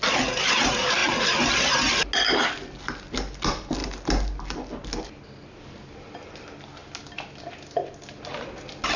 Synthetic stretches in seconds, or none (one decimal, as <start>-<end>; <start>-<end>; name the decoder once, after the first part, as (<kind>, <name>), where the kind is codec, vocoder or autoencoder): 1.0-1.5 (vocoder, BigVGAN v2)